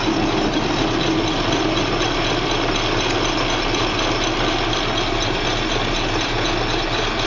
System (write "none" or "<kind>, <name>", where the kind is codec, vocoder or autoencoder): none